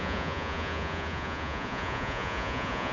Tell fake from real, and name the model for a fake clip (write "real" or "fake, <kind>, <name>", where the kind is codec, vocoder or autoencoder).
fake, vocoder, Vocos